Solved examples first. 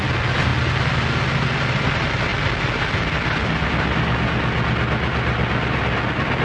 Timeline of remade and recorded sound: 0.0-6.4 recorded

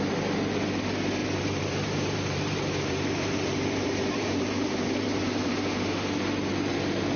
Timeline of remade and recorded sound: 0.0-1.2 recorded; 1.2-5.5 remade; 5.5-7.2 recorded

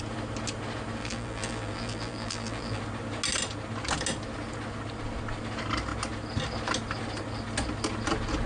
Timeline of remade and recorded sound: 0.0-1.0 recorded; 1.0-2.8 remade; 2.8-8.5 recorded

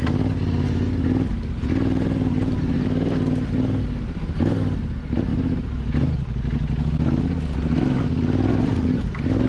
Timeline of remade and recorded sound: 0.0-9.5 recorded

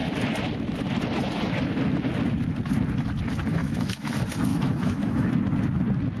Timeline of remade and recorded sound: 0.0-3.6 recorded; 3.6-4.1 remade; 4.1-4.5 recorded; 4.5-5.3 remade; 5.3-6.2 recorded

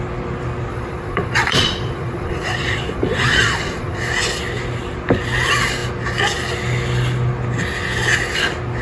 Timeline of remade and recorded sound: 0.0-0.7 recorded; 0.7-4.0 remade; 4.0-8.8 recorded

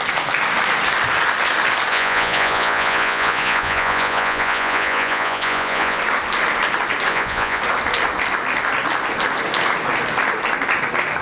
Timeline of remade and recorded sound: 0.0-1.9 recorded; 1.9-6.0 remade; 6.0-7.1 recorded; 7.1-7.6 remade; 7.6-11.2 recorded